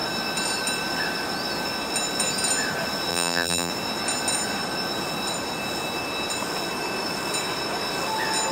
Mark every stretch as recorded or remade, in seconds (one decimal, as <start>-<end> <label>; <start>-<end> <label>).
0.0-3.1 recorded; 3.1-3.7 remade; 3.7-8.5 recorded